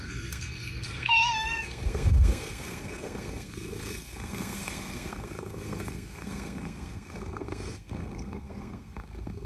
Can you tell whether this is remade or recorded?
remade